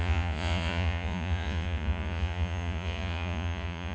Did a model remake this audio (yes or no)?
yes